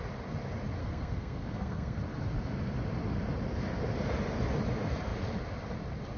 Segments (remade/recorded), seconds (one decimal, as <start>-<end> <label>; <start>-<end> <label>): 0.0-0.8 recorded; 0.8-2.0 remade; 2.0-6.2 recorded